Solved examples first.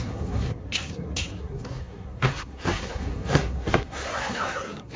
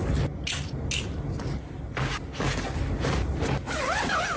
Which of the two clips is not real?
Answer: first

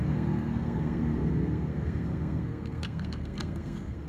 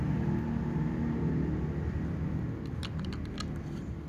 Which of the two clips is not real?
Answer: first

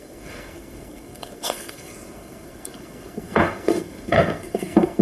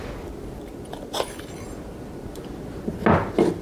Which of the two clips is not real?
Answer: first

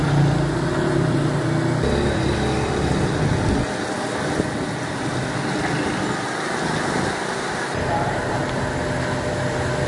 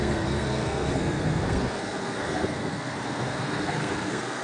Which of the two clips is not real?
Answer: second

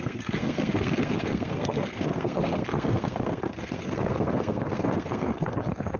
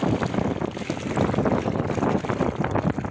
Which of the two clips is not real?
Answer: first